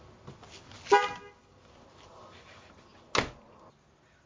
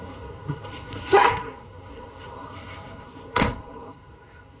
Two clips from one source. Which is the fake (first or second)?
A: second